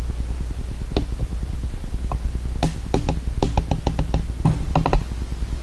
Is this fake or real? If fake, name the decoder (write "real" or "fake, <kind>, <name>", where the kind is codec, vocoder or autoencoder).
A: real